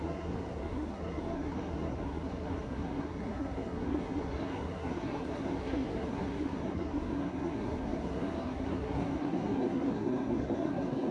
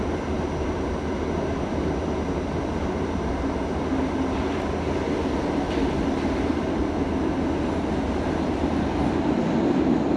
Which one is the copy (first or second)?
first